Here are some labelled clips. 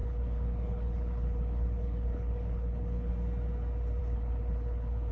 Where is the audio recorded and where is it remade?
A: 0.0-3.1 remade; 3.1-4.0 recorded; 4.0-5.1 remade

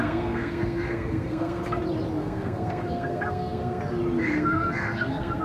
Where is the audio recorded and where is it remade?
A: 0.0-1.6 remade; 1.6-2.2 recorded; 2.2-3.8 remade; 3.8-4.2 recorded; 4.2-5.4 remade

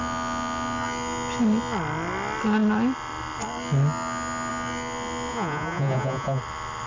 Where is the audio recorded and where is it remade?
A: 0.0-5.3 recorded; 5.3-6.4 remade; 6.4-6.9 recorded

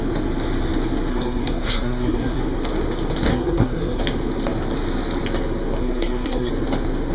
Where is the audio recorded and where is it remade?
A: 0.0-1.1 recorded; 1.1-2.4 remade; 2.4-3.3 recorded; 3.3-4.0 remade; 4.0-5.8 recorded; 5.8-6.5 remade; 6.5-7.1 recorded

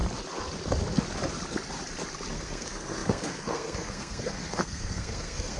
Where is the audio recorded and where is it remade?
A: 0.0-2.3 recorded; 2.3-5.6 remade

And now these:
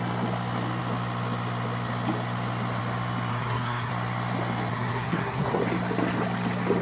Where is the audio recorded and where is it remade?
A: 0.0-3.3 recorded; 3.3-3.9 remade; 3.9-4.7 recorded; 4.7-5.6 remade; 5.6-6.8 recorded